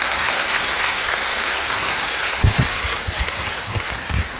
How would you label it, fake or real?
fake